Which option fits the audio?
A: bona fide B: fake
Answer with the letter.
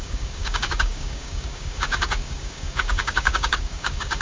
B